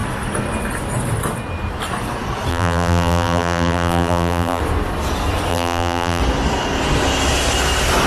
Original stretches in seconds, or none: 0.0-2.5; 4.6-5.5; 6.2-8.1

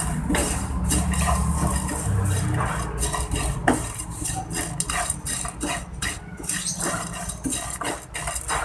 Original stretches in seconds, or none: 0.0-0.4; 1.5-3.6; 4.4-8.6

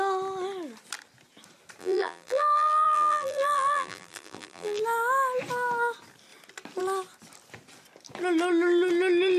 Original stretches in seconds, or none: 0.0-1.8; 4.8-9.4

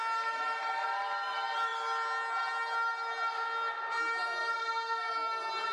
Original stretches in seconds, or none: 0.0-5.7

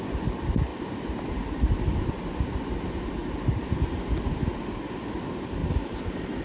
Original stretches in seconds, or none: 0.0-0.7; 2.1-5.6